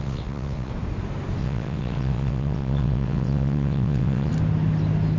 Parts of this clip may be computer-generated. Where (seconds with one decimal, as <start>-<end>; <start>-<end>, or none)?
0.0-0.7; 1.4-4.3